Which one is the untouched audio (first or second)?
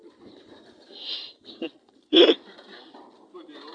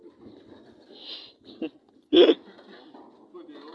second